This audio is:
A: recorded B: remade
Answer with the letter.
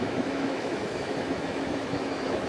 B